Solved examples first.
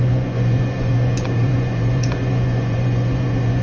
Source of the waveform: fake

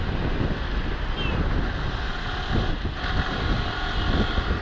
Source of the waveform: real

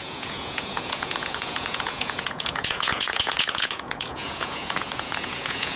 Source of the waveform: fake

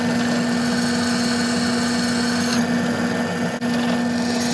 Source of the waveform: real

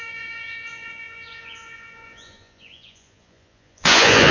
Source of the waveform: fake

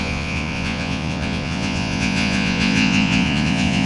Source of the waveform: fake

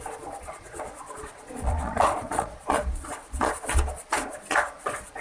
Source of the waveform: fake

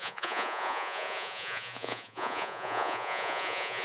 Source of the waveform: fake